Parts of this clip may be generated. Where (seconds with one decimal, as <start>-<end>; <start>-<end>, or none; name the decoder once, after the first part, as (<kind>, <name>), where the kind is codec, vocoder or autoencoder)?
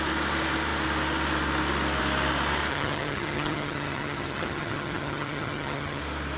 2.7-6.0 (vocoder, HiFi-GAN)